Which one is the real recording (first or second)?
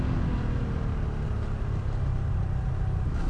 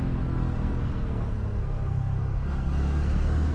first